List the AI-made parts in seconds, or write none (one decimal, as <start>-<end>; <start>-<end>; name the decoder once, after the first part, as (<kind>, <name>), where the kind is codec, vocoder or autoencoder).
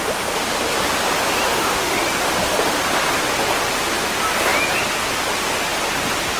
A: 1.5-2.0 (autoencoder, DAC-VAE)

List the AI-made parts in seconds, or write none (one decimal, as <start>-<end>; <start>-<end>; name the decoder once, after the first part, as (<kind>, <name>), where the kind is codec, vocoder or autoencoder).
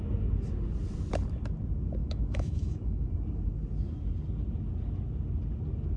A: 2.0-3.1 (autoencoder, DAC-VAE)